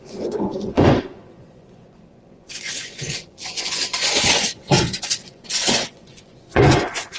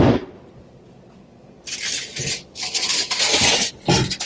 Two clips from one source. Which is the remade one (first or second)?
first